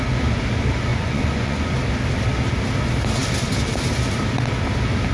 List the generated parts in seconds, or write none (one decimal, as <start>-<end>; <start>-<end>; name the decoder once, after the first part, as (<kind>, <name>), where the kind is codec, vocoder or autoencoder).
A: 0.9-1.7 (vocoder, Vocos)